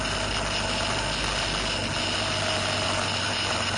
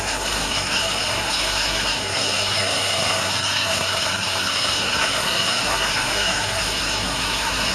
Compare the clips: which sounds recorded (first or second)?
first